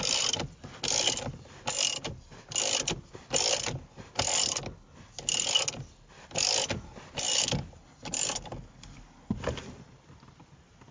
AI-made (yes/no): no